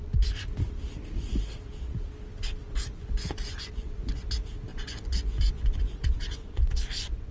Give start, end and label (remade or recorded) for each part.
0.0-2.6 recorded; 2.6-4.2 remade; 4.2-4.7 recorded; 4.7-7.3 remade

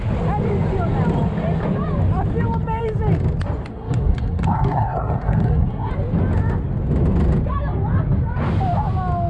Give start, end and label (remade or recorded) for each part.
0.0-3.7 recorded; 3.7-5.9 remade; 5.9-9.3 recorded

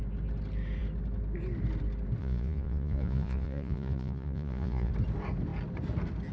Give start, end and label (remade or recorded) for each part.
0.0-2.2 recorded; 2.2-4.9 remade; 4.9-6.3 recorded